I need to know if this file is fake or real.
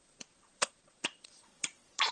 fake